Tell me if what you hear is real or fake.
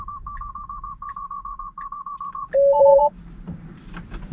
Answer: fake